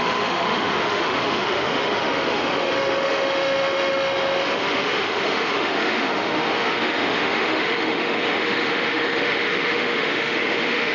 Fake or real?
fake